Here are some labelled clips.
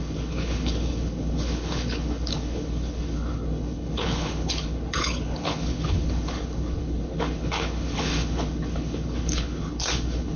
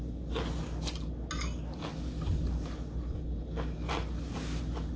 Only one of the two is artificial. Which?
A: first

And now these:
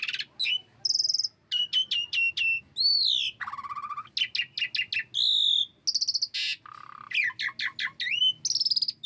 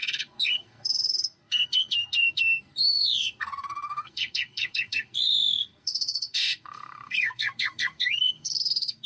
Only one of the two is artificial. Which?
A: second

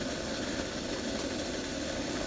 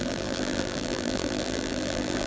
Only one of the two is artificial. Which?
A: second